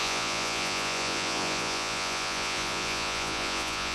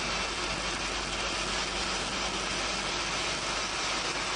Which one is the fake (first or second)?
first